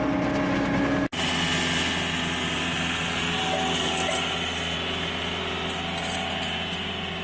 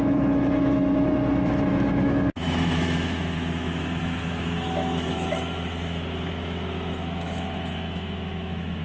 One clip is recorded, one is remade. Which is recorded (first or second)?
first